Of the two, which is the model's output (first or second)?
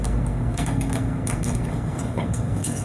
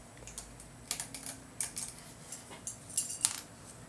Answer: first